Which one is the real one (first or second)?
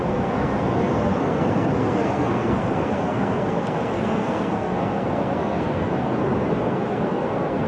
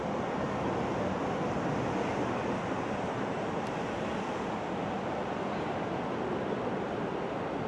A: second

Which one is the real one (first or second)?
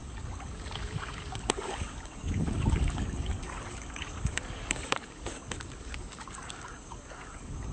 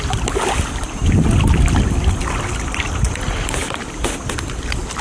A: second